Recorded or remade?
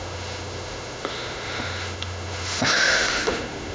remade